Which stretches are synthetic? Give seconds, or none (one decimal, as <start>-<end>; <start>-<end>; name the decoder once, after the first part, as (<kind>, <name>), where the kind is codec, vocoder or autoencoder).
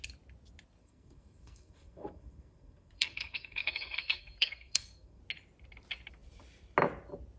0.8-5.2 (codec, SNAC)